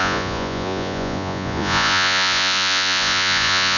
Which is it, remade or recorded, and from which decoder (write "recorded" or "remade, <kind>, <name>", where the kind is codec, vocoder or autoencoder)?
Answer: remade, vocoder, Vocos